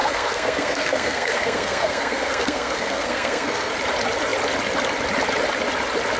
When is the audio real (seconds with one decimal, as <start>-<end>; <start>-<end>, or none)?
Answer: 3.7-6.2